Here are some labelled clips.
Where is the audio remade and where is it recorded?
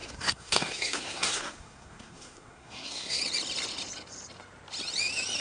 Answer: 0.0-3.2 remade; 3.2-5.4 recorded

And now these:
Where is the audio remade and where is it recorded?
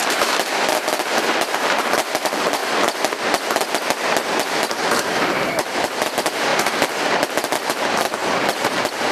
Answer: 0.0-2.6 remade; 2.6-4.2 recorded; 4.2-6.5 remade; 6.5-7.4 recorded; 7.4-9.1 remade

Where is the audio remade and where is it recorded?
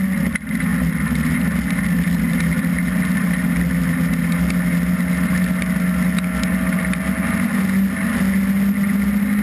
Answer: 0.0-9.4 recorded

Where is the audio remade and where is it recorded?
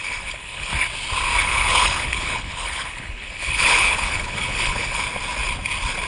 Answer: 0.0-0.7 remade; 0.7-1.4 recorded; 1.4-5.0 remade; 5.0-6.1 recorded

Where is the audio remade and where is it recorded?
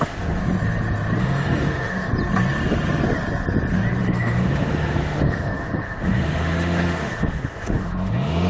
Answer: 0.0-0.4 remade; 0.4-1.2 recorded; 1.2-2.1 remade; 2.1-4.0 recorded; 4.0-8.5 remade